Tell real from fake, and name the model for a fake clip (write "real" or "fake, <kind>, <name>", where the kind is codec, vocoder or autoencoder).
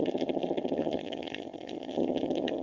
fake, vocoder, HiFi-GAN